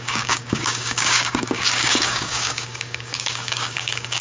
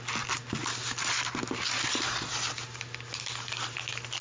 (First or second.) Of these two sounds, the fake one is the first